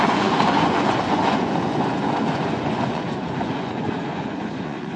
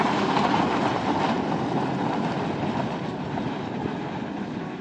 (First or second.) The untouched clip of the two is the second